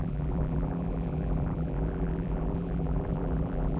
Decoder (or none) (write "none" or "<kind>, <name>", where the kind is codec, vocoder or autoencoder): vocoder, BigVGAN v2